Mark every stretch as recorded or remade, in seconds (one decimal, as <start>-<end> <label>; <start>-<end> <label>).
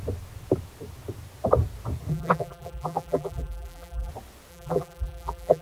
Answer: 0.0-2.1 recorded; 2.1-4.1 remade; 4.1-4.5 recorded; 4.5-5.6 remade